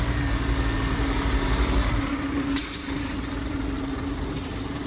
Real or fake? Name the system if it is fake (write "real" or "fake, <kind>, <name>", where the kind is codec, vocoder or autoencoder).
fake, vocoder, BigVGAN v2